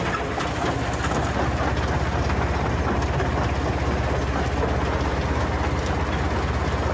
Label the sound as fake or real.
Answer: real